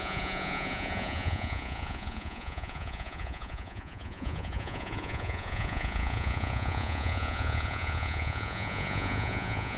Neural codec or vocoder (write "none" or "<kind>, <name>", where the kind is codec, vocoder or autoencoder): vocoder, Vocos